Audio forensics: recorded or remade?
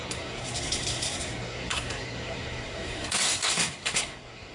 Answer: remade